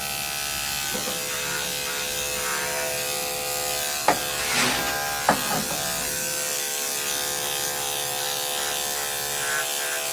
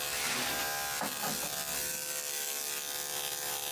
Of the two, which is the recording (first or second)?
first